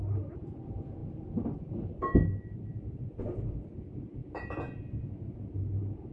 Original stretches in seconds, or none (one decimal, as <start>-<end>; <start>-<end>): 0.0-6.1